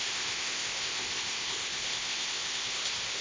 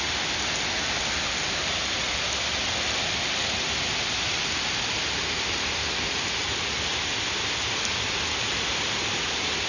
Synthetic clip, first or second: first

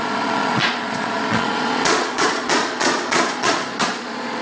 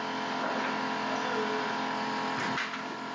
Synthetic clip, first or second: first